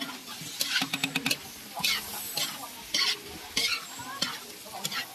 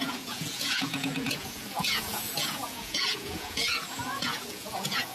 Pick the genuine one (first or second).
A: first